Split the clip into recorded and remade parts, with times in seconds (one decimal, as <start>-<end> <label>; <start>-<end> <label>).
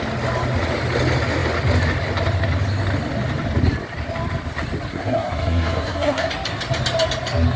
0.0-4.9 recorded; 4.9-6.3 remade; 6.3-7.6 recorded